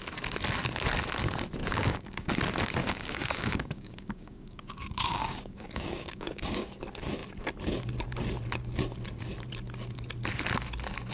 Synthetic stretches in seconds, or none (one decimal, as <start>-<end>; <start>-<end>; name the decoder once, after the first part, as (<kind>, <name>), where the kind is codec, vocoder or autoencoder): 1.6-2.4 (codec, DAC); 2.8-6.8